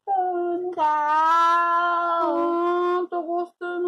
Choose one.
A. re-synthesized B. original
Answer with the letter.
B